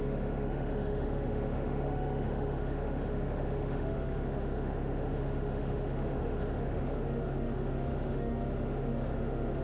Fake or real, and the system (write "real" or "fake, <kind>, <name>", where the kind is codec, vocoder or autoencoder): fake, autoencoder, DAC-VAE